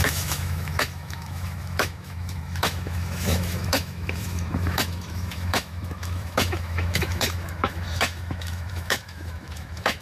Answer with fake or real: fake